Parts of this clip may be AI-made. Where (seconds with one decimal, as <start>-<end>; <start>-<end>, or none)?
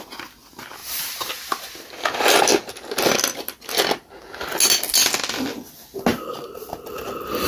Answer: 0.8-1.3; 6.1-6.7